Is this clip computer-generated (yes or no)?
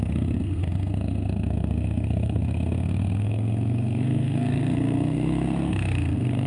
yes